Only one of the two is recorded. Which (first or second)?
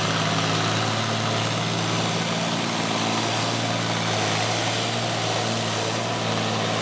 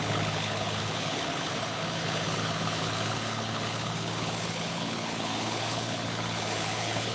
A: first